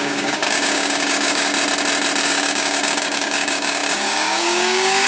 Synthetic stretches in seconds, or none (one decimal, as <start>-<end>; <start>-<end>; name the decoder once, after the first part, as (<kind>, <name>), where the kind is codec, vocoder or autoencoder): 0.0-1.5 (codec, DAC); 2.2-5.1